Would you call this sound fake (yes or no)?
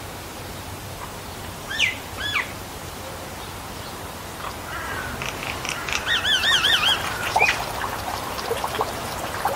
yes